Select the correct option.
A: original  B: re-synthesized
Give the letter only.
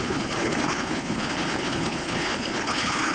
B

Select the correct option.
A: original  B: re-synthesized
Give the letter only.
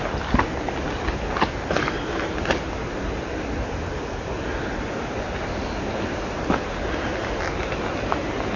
A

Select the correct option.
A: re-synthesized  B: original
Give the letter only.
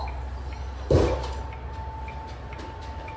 B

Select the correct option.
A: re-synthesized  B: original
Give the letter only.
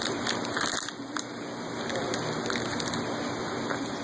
B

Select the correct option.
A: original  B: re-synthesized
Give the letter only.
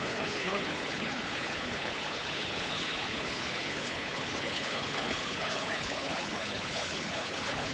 B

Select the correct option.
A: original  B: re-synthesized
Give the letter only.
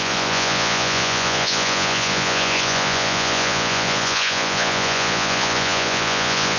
B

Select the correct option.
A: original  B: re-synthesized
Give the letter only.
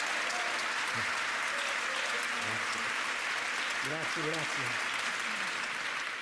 A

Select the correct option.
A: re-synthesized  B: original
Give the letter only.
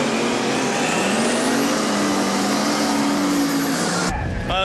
B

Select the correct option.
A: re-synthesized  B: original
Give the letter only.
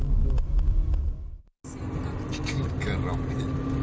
B